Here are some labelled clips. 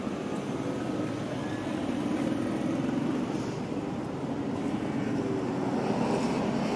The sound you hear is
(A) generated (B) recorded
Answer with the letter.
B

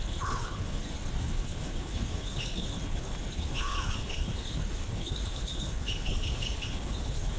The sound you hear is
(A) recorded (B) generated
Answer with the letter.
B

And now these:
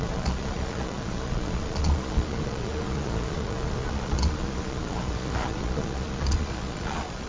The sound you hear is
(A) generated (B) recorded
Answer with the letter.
A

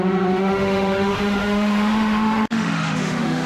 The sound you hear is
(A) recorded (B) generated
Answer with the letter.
B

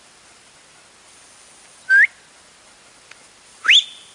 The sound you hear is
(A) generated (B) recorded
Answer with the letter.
B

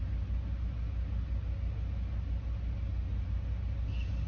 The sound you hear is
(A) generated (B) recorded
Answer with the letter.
B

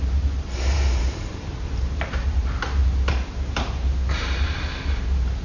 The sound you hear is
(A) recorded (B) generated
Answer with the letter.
B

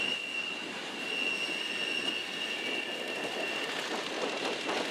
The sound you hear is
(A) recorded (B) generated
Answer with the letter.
A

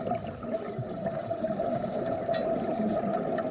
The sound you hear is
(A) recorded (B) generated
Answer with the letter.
A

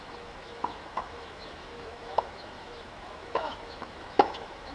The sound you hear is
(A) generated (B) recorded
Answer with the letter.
A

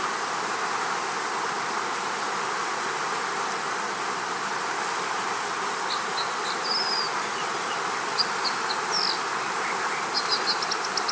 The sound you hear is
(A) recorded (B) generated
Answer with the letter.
A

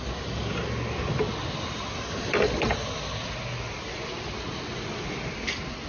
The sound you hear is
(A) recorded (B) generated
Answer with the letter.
A